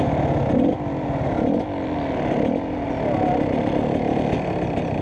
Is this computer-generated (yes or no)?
no